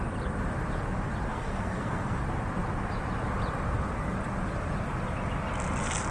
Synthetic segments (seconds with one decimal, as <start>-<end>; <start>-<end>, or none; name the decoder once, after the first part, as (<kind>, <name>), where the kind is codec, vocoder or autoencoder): 1.3-2.2 (codec, SNAC)